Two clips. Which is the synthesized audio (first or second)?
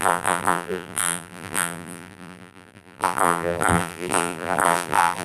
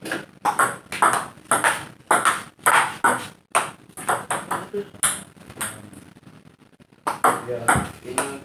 first